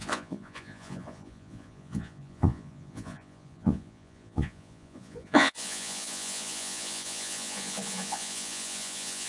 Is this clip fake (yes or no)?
yes